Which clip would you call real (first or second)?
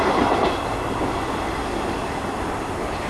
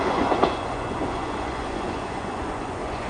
first